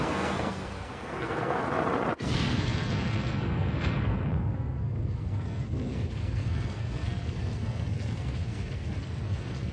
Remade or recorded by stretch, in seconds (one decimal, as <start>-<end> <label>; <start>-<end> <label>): 0.0-1.6 remade; 1.6-2.1 recorded; 2.1-9.7 remade